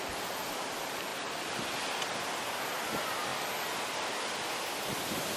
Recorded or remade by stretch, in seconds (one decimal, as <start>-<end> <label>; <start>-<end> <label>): 0.0-5.4 recorded